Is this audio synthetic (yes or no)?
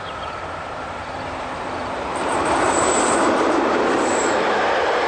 yes